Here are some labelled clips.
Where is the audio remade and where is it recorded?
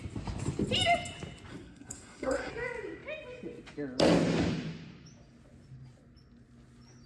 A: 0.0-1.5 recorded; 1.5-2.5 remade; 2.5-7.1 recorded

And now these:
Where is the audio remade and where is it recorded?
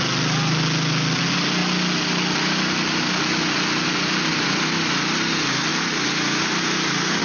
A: 0.0-5.7 recorded; 5.7-7.2 remade